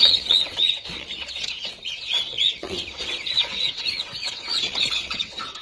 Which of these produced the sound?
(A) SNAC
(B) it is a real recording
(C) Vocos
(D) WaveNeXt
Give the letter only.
D